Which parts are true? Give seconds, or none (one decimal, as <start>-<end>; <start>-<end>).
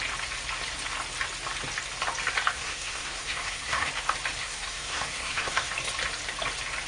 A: 0.0-2.5; 3.9-4.4; 5.7-6.9